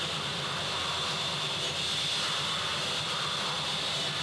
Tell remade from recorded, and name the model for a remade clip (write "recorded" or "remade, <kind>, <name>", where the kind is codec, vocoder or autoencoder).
recorded